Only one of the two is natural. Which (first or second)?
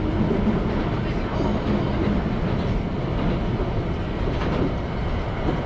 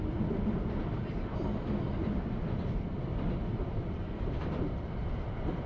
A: first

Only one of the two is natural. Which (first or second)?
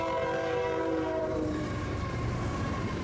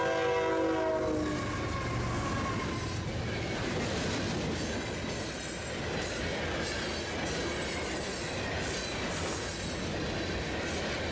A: second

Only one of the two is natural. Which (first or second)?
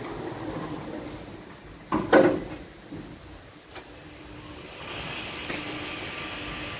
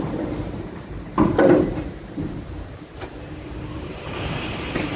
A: first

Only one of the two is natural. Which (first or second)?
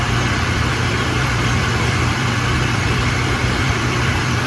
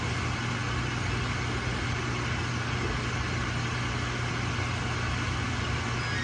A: second